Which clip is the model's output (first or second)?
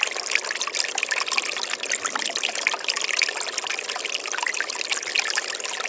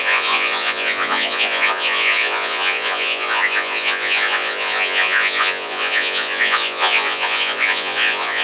second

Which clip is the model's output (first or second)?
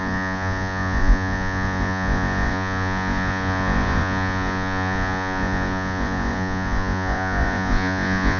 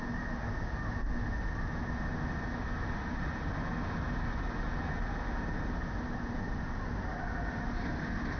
first